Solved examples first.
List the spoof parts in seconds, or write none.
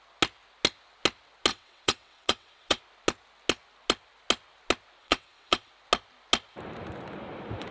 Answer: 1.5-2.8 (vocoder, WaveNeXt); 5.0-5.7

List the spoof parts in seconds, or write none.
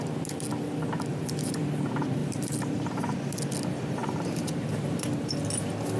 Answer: 1.1-1.6 (vocoder, BigVGAN v2); 2.2-3.0; 4.0-5.4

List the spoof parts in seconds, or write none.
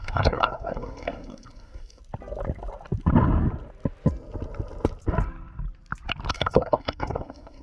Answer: 0.0-2.0 (codec, SNAC); 6.3-7.6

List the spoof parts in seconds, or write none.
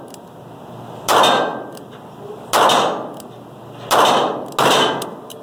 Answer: none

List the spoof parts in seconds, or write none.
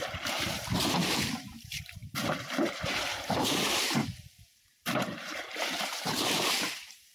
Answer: 0.0-0.7 (vocoder, BigVGAN v2); 1.3-7.1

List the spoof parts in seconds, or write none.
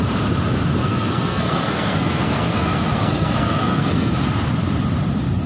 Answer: 0.8-4.1 (codec, SNAC)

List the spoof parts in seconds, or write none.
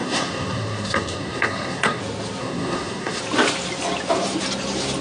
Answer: 0.0-2.0 (codec, SNAC); 2.4-3.2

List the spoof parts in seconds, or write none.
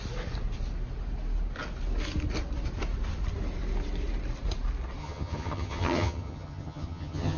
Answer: 5.0-7.4 (vocoder, HiFi-GAN)